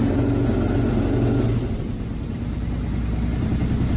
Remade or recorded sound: recorded